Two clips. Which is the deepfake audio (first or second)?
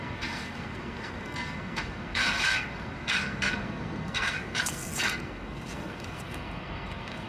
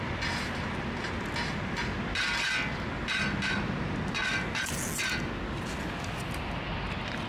first